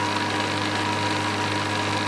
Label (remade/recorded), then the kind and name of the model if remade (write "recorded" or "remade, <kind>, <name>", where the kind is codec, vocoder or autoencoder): recorded